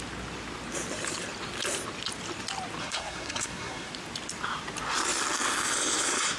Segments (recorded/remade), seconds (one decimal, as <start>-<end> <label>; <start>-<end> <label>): 0.0-2.8 recorded; 2.8-3.9 remade; 3.9-6.4 recorded